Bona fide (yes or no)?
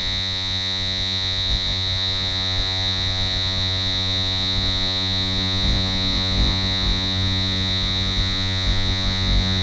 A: no